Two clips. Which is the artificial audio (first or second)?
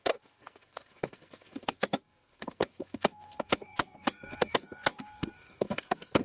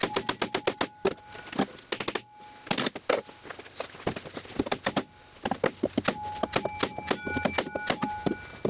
first